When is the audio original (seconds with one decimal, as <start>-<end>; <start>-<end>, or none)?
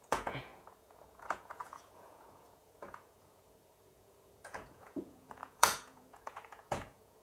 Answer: none